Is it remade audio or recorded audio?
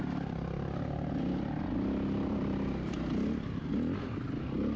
recorded